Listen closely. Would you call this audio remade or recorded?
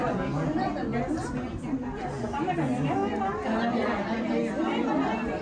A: recorded